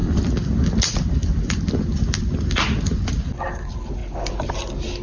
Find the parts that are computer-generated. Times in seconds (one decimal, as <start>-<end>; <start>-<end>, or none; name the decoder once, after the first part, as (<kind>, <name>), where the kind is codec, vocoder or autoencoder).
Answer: none